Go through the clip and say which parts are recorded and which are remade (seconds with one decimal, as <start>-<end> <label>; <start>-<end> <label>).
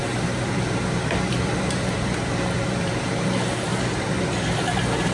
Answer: 0.0-3.1 remade; 3.1-3.7 recorded; 3.7-5.1 remade